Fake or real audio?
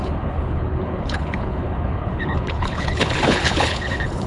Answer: fake